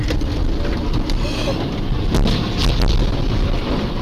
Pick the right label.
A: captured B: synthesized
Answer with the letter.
A